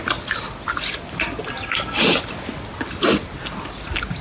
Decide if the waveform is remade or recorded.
recorded